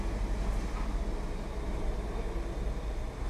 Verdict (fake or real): real